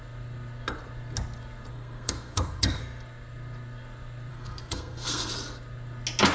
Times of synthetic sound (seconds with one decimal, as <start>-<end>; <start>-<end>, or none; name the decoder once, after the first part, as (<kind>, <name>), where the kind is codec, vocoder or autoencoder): 1.7-2.8 (codec, SNAC); 4.3-5.3